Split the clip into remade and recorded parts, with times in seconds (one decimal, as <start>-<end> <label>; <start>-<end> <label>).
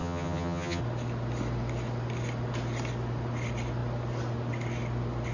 0.0-0.8 remade; 0.8-5.3 recorded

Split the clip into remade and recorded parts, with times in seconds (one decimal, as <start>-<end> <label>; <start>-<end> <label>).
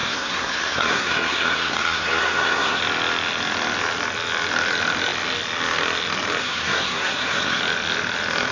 0.0-2.8 remade; 2.8-6.4 recorded; 6.4-7.6 remade; 7.6-8.5 recorded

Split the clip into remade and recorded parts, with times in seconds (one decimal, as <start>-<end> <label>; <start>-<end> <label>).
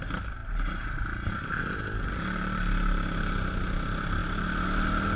0.0-5.2 recorded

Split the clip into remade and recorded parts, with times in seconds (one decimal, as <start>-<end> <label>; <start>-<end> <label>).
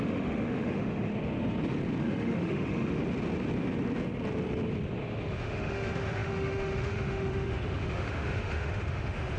0.0-1.1 remade; 1.1-2.0 recorded; 2.0-3.0 remade; 3.0-5.3 recorded; 5.3-9.4 remade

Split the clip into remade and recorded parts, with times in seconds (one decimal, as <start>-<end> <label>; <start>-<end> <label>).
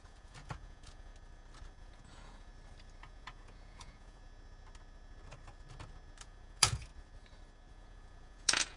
0.0-1.1 remade; 1.1-1.8 recorded; 1.8-2.5 remade; 2.5-3.0 recorded; 3.0-4.2 remade; 4.2-6.2 recorded; 6.2-6.9 remade; 6.9-7.7 recorded; 7.7-8.8 remade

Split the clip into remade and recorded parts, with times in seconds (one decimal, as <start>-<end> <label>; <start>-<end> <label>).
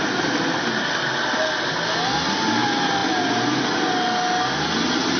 0.0-5.2 recorded